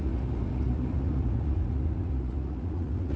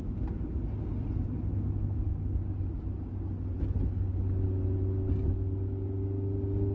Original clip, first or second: second